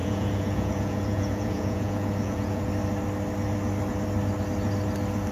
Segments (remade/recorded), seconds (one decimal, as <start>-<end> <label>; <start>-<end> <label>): 0.0-2.7 remade; 2.7-5.3 recorded